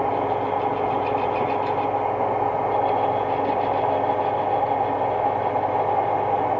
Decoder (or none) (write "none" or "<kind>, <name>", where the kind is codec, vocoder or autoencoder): none